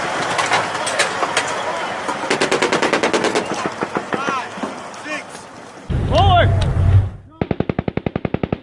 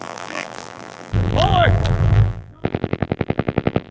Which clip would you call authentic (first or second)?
first